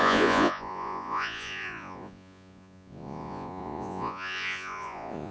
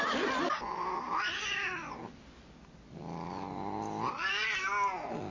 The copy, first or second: first